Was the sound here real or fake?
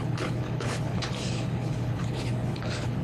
fake